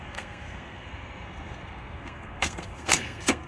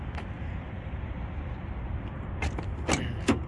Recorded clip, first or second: second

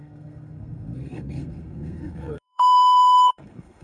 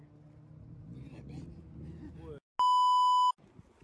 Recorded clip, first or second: second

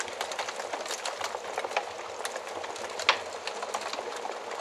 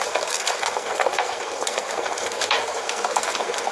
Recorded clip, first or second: first